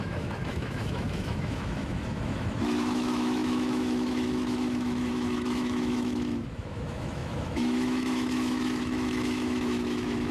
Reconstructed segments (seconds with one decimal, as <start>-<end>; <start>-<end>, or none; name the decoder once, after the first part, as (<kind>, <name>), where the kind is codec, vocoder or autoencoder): 0.0-10.3 (autoencoder, DAC-VAE)